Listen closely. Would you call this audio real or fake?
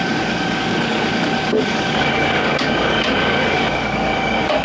fake